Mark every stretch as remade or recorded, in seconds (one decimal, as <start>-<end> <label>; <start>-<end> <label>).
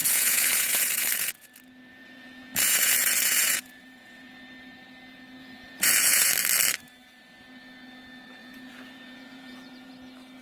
0.0-1.5 remade; 1.5-1.9 recorded; 1.9-4.4 remade; 4.4-5.4 recorded; 5.4-6.3 remade; 6.3-8.4 recorded; 8.4-9.9 remade; 9.9-10.4 recorded